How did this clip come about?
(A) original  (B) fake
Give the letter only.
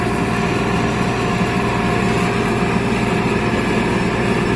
A